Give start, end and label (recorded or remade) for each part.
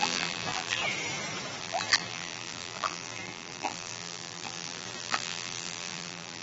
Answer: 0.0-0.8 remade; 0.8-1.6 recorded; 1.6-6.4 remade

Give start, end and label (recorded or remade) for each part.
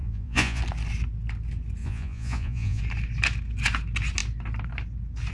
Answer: 0.0-0.6 remade; 0.6-1.8 recorded; 1.8-2.8 remade; 2.8-5.3 recorded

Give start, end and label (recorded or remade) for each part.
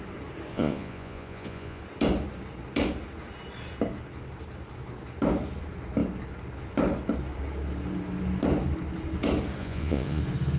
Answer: 0.0-0.5 recorded; 0.5-1.8 remade; 1.8-9.6 recorded; 9.6-10.2 remade; 10.2-10.6 recorded